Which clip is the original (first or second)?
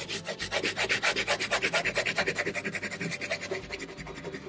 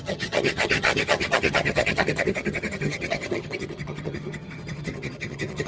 first